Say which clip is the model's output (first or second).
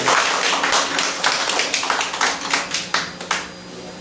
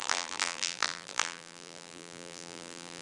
second